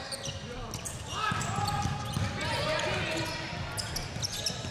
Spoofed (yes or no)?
no